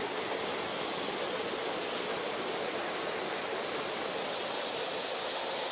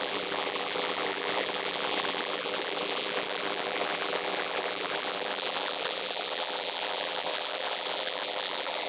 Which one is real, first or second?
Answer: first